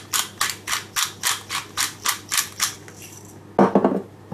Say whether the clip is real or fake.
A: real